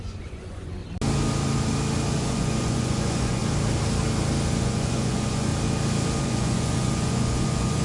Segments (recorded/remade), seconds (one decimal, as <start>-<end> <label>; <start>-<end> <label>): 0.0-0.8 remade; 0.8-2.1 recorded; 2.1-3.4 remade; 3.4-4.6 recorded; 4.6-5.5 remade; 5.5-6.2 recorded; 6.2-7.8 remade